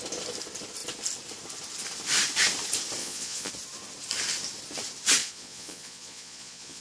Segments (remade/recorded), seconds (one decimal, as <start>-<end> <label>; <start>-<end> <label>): 0.0-3.0 recorded; 3.0-3.5 remade; 3.5-5.2 recorded; 5.2-6.8 remade